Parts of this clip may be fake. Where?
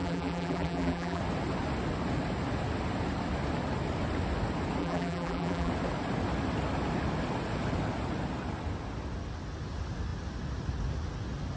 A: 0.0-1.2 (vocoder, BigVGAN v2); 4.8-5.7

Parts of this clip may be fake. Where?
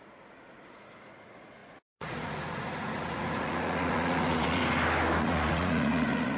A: 0.0-4.6 (vocoder, Vocos); 5.2-6.4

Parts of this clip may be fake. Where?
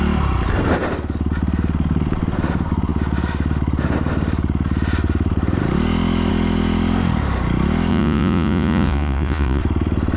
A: 7.9-9.6 (vocoder, Vocos)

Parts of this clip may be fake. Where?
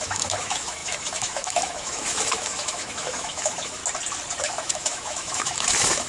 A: 0.0-3.8 (autoencoder, DAC-VAE); 4.4-6.1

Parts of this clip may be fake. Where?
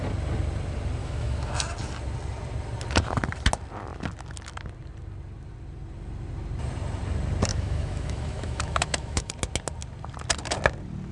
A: 1.0-1.5 (autoencoder, DAC-VAE); 7.5-9.3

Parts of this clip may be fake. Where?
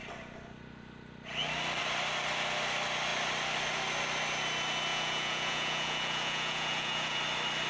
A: 4.9-7.2 (vocoder, Vocos)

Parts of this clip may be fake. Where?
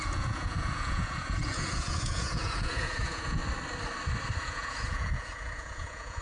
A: 0.0-3.4 (vocoder, Vocos); 4.4-6.2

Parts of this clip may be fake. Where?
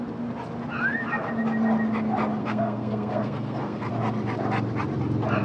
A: 2.4-3.9 (codec, SNAC)